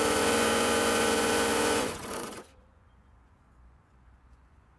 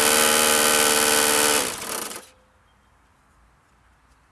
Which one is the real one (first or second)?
second